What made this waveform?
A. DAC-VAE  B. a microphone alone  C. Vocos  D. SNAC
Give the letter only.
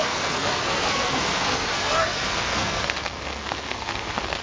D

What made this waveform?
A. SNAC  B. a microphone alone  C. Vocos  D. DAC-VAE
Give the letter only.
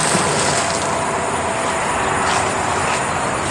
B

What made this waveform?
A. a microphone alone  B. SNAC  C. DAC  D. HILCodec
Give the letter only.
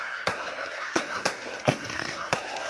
B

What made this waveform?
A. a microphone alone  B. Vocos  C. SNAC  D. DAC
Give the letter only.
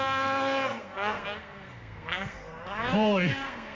C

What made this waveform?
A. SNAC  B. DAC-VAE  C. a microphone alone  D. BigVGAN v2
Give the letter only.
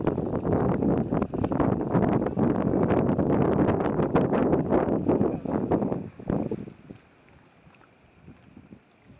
C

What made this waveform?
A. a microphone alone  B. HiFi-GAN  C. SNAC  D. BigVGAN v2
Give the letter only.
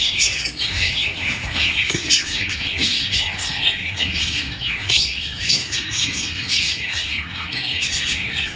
C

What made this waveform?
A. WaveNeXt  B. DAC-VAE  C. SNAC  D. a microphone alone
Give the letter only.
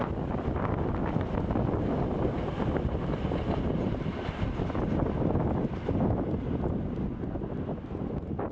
D